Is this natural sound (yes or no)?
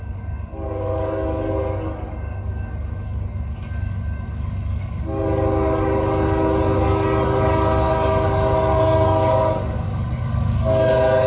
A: no